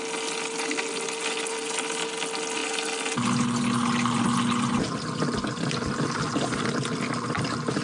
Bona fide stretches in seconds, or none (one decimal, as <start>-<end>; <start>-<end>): 0.0-7.8